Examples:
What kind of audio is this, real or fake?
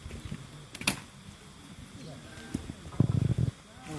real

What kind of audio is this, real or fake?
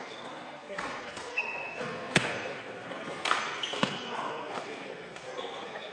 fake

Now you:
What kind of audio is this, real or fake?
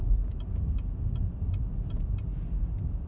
real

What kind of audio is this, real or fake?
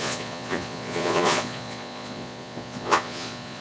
fake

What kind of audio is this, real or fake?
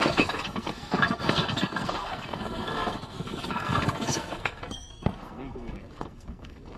fake